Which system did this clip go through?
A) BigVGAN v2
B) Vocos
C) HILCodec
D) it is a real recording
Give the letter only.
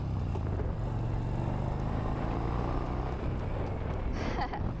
D